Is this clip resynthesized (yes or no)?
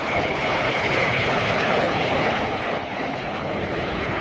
yes